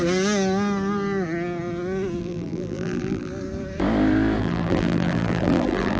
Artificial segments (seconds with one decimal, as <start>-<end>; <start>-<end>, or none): 2.2-3.3; 4.4-6.0